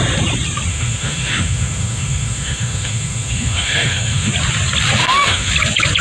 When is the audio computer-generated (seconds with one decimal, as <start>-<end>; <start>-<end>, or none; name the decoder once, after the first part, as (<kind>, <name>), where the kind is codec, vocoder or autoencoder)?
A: 0.7-4.3 (autoencoder, DAC-VAE); 5.0-5.5